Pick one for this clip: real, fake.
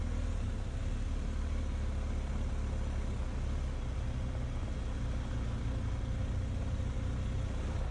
real